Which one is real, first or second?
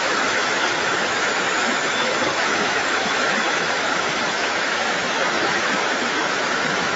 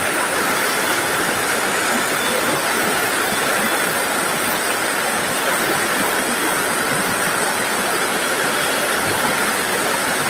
second